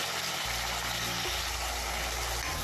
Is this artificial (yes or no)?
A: no